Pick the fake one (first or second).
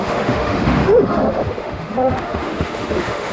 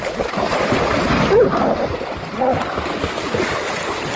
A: first